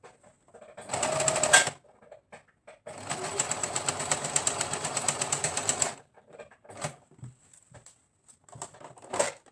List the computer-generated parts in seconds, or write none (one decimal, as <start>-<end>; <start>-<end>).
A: 3.3-8.0